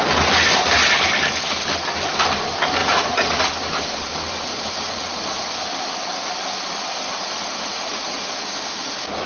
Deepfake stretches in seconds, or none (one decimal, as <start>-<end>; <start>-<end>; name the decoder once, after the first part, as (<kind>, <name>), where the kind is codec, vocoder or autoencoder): 2.8-3.4 (vocoder, Vocos); 7.7-8.3